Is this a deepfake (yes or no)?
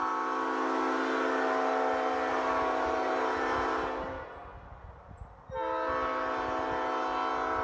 no